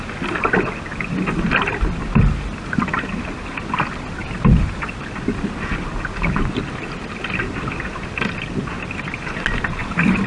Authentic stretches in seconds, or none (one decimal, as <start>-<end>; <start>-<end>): 0.0-4.2; 4.9-9.8